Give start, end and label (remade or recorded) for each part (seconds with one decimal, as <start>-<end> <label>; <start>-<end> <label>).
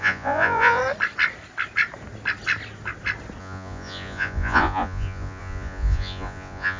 0.0-0.8 remade; 0.8-3.4 recorded; 3.4-6.8 remade